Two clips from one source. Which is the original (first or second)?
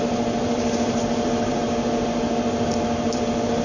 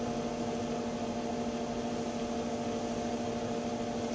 second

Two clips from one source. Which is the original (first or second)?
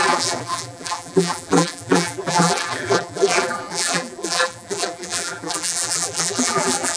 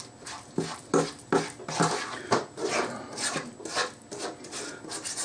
second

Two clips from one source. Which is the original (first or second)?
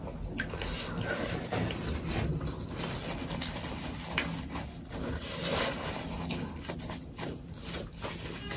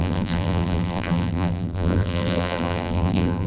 first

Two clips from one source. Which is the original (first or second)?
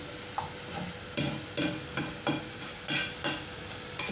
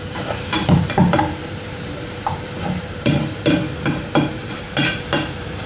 first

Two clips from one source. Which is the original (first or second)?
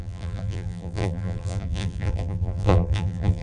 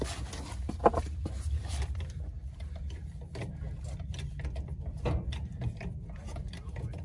second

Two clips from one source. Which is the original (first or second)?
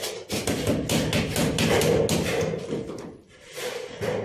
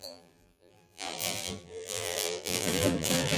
first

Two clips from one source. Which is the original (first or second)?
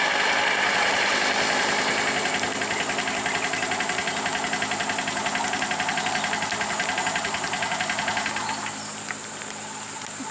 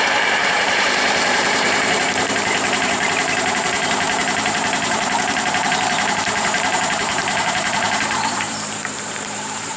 first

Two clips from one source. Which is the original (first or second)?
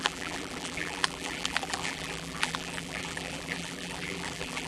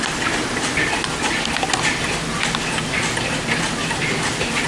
second